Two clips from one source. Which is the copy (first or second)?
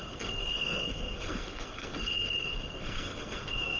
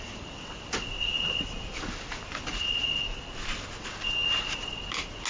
first